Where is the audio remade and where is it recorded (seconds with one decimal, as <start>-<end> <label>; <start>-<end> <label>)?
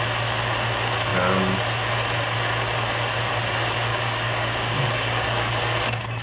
0.0-3.9 recorded; 3.9-5.5 remade; 5.5-6.2 recorded